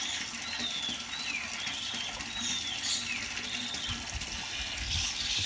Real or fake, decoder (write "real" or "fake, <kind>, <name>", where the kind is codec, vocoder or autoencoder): real